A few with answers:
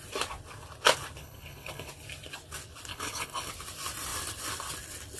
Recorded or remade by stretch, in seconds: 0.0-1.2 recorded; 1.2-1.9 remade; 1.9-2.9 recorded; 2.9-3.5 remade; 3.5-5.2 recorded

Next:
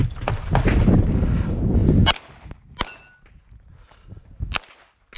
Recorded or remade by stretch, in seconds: 0.0-5.2 recorded

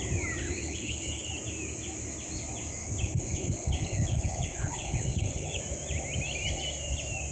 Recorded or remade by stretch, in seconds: 0.0-0.6 recorded; 0.6-1.3 remade; 1.3-2.8 recorded; 2.8-5.6 remade; 5.6-7.3 recorded

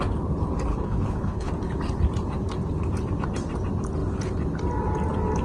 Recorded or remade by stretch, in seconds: 0.0-0.7 recorded; 0.7-1.5 remade; 1.5-5.4 recorded

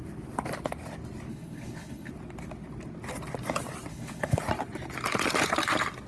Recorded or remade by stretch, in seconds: 0.0-1.3 recorded; 1.3-2.1 remade; 2.1-3.9 recorded; 3.9-4.4 remade; 4.4-6.1 recorded

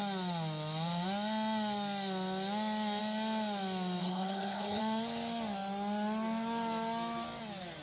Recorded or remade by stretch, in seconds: 0.0-4.0 recorded; 4.0-4.8 remade; 4.8-7.8 recorded

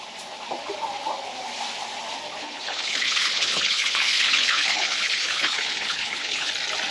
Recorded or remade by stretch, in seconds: 0.0-2.4 recorded; 2.4-6.5 remade; 6.5-6.9 recorded